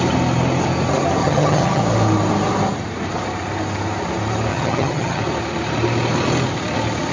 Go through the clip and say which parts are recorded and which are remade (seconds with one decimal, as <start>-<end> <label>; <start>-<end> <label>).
0.0-1.2 recorded; 1.2-1.8 remade; 1.8-4.5 recorded; 4.5-5.2 remade; 5.2-7.1 recorded